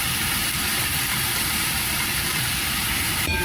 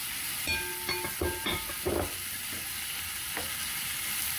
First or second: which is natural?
second